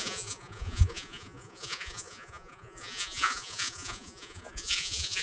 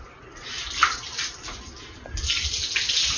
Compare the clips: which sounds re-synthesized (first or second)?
first